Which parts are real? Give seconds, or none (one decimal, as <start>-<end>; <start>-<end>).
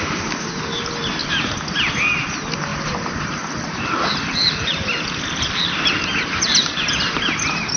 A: 0.0-2.7; 6.9-7.8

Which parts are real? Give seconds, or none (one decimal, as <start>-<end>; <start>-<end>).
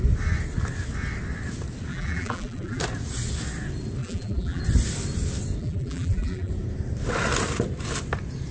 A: 0.0-1.9; 2.8-4.0; 4.6-5.6; 6.5-8.5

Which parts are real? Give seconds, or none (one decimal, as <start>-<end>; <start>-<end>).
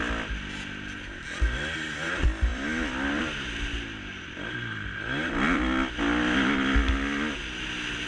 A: 0.0-2.5; 3.2-8.1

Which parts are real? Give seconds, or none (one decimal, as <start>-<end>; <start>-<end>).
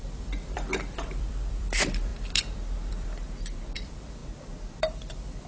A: 4.2-4.8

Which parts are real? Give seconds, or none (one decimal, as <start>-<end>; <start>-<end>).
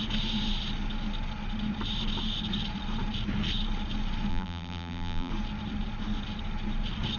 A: 0.0-4.3; 5.3-7.2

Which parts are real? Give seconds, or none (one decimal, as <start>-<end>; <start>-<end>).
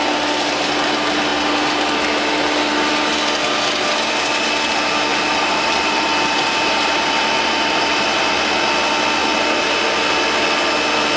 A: 0.0-5.1; 8.3-9.2; 9.8-11.2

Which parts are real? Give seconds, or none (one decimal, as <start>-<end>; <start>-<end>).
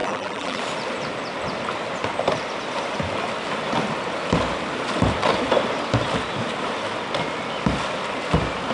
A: 0.6-8.7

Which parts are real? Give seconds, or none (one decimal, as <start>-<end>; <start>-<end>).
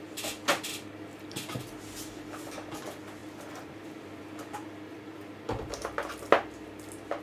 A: 0.0-3.2; 6.3-7.2